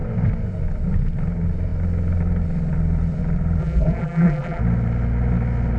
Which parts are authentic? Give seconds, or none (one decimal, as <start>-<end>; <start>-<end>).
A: 0.0-3.6; 4.6-5.8